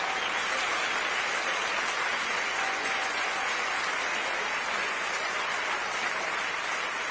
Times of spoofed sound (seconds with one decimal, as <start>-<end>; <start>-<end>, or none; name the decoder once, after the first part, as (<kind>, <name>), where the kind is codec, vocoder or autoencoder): 2.1-3.8 (vocoder, Vocos); 4.8-5.7